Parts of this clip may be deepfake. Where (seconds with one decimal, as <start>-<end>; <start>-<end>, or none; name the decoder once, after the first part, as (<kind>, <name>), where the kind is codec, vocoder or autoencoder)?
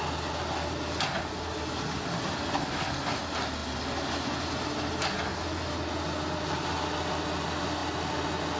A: none